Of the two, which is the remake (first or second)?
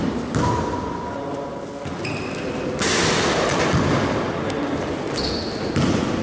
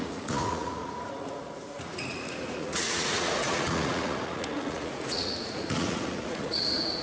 second